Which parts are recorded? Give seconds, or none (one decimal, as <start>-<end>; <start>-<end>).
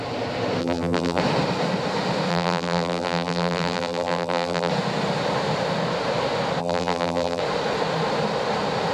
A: 0.0-0.6; 1.2-2.3; 4.7-6.6; 7.4-8.9